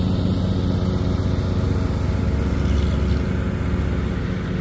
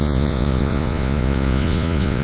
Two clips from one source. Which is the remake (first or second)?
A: second